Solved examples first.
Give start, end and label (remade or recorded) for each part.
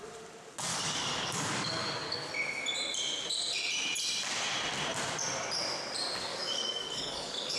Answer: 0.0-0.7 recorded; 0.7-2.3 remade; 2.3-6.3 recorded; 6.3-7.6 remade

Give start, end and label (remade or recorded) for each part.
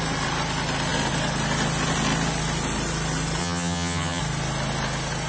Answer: 0.0-3.4 recorded; 3.4-4.2 remade; 4.2-5.3 recorded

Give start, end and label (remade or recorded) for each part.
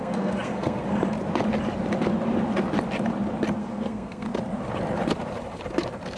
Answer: 0.0-1.0 remade; 1.0-3.6 recorded; 3.6-4.3 remade; 4.3-6.2 recorded